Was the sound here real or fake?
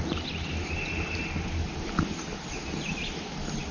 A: real